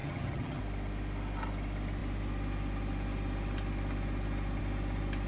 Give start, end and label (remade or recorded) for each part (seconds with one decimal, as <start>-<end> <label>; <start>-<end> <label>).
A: 0.0-0.6 remade; 0.6-5.3 recorded